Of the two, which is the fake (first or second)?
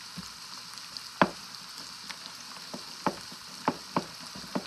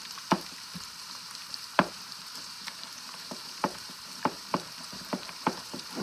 second